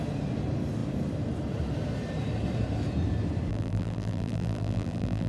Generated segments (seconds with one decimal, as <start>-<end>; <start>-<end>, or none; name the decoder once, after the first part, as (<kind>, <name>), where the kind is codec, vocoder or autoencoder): 3.5-5.3 (vocoder, BigVGAN v2)